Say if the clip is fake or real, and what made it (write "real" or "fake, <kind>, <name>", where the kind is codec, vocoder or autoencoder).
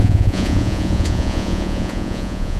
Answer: fake, vocoder, Vocos